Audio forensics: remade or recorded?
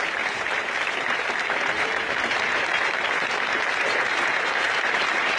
remade